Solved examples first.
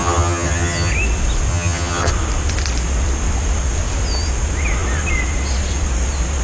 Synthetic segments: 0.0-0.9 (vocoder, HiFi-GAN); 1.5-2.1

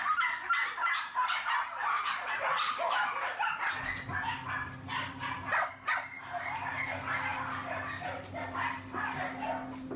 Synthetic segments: none